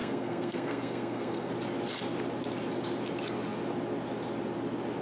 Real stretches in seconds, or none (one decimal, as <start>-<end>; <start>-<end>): 1.5-5.0